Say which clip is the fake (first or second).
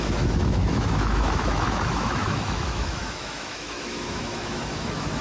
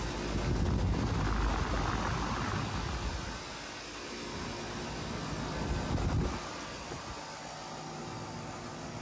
first